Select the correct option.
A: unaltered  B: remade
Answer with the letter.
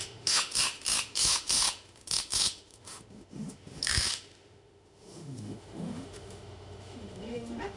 B